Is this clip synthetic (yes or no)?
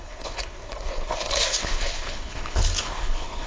yes